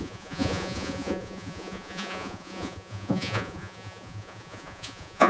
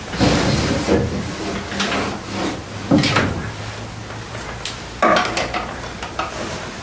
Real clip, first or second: second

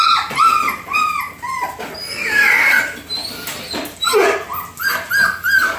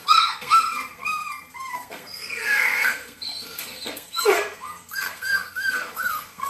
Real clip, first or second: first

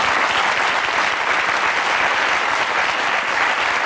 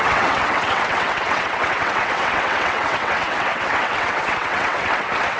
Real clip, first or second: first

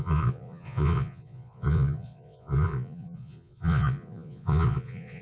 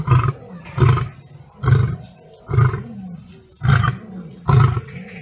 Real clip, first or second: second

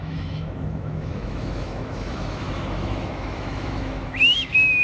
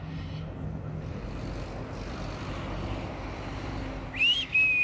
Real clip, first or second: second